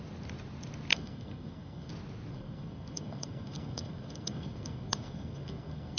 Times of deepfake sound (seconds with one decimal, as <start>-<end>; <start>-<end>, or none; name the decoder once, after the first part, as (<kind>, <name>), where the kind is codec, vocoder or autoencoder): 0.9-1.9 (codec, SNAC); 2.3-6.0